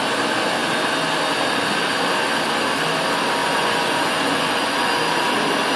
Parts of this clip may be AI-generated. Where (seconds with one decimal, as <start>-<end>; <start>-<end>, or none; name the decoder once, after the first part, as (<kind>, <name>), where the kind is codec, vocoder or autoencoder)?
3.4-4.9 (vocoder, Vocos)